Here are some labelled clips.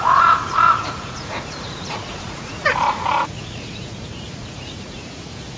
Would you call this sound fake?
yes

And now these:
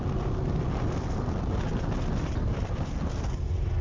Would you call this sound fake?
no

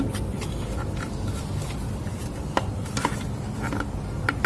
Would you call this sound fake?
no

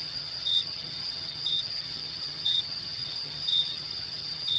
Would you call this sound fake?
yes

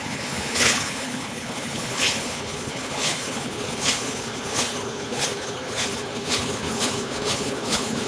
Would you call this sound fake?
yes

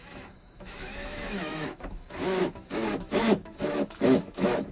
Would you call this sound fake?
yes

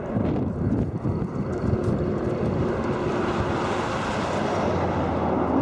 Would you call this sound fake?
no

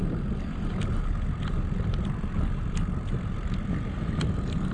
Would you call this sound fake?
no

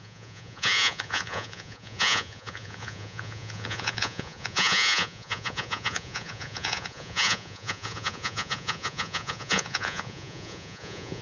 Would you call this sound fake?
yes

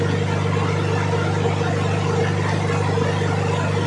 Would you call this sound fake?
no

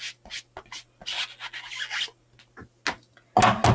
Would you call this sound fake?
no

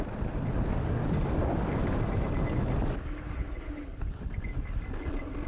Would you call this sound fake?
no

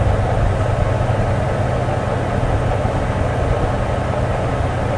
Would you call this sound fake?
no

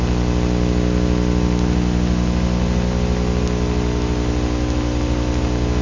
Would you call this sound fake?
no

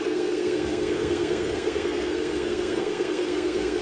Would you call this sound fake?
yes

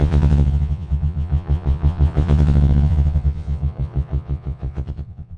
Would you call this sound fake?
yes